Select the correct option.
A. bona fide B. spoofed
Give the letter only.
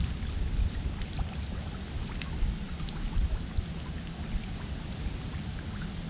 A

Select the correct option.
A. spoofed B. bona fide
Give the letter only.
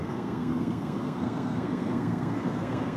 A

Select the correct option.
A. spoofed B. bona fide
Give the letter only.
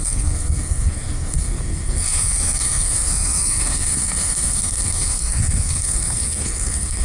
A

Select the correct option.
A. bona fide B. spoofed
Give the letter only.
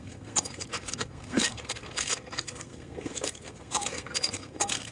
B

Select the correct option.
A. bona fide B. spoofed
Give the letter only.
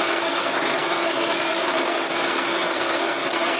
B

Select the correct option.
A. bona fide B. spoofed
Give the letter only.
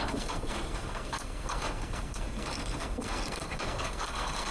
B